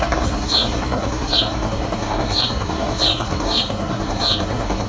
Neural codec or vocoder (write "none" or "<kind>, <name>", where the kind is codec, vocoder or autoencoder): codec, SNAC